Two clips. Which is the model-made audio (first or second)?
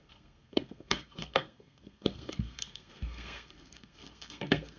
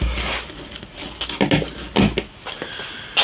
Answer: first